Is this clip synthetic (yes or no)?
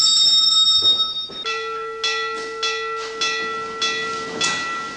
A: no